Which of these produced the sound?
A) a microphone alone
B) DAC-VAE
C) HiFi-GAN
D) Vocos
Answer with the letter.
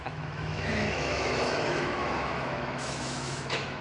B